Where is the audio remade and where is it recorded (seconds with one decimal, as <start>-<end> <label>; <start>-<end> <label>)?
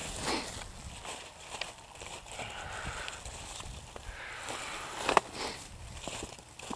0.0-6.8 recorded